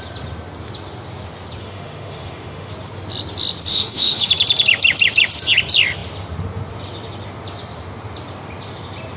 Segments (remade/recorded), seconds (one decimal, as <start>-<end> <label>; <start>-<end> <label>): 0.0-1.6 recorded; 1.6-2.7 remade; 2.7-3.7 recorded; 3.7-4.3 remade; 4.3-9.2 recorded